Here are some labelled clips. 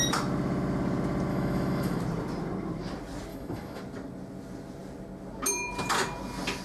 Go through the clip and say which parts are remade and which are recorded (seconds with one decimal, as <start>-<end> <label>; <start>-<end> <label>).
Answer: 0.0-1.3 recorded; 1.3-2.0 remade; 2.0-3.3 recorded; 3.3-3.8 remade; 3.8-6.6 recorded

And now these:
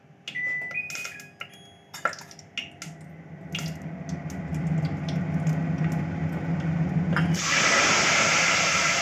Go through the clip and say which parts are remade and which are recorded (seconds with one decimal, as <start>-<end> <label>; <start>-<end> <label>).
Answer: 0.0-4.5 recorded; 4.5-5.2 remade; 5.2-9.0 recorded

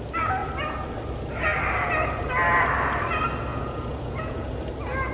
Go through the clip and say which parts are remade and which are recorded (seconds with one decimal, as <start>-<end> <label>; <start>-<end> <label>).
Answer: 0.0-3.5 recorded; 3.5-4.6 remade; 4.6-5.1 recorded

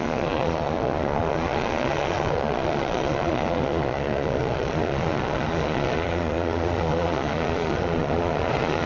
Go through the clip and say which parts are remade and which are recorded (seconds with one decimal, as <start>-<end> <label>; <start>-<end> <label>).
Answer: 0.0-8.9 remade